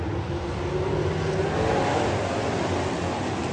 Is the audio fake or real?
real